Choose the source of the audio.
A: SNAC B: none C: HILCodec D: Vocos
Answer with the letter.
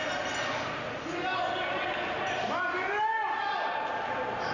B